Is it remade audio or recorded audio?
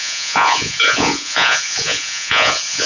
remade